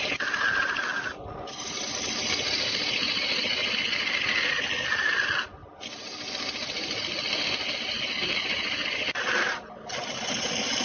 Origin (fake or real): real